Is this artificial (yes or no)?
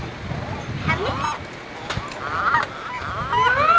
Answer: no